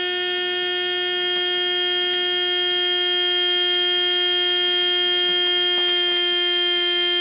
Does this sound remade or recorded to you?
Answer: recorded